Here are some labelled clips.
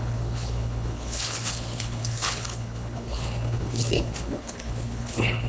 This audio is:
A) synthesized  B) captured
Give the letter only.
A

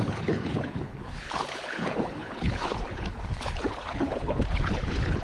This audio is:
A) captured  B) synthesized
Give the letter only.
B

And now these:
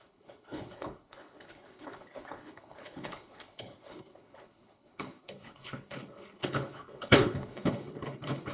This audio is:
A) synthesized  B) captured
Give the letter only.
A